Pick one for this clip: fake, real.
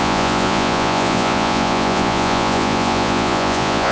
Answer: fake